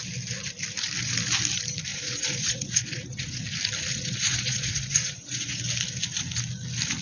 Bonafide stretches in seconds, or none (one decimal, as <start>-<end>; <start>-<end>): 0.0-1.9; 3.4-3.9; 5.6-7.0